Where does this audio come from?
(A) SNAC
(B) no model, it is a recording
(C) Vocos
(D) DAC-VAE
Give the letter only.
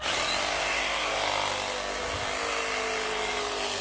B